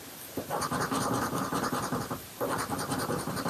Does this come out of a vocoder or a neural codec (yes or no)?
yes